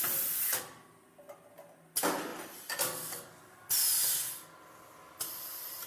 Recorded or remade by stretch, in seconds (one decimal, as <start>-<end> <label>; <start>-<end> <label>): 0.0-5.9 recorded